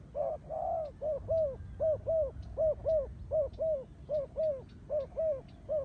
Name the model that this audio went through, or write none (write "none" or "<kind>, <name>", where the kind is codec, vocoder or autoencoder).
none